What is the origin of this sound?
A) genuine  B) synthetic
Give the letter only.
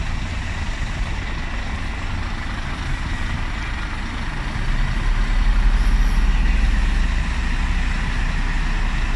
A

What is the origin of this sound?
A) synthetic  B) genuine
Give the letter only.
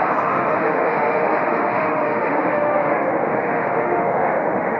A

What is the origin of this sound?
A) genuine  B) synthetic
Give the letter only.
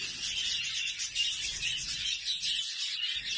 A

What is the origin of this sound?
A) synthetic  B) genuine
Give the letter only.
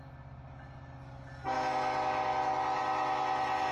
B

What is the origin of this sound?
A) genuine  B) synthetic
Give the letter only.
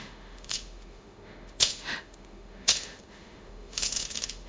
B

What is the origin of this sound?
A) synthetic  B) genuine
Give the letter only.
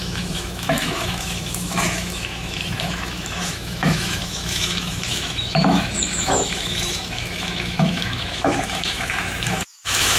A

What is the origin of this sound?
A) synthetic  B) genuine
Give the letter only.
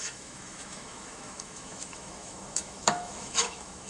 A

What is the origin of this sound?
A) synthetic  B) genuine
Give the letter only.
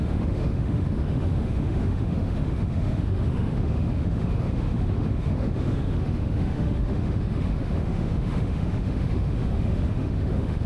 A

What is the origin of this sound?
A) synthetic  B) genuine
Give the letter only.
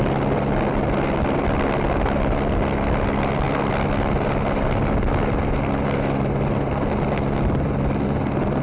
B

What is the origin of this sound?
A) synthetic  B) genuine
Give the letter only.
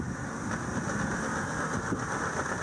B